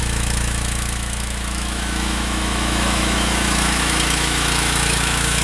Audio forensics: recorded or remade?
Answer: remade